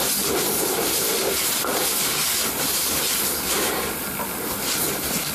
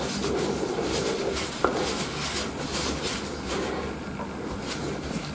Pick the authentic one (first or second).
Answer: second